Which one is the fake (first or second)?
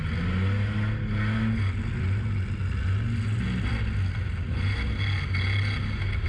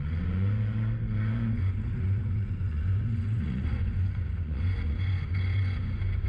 second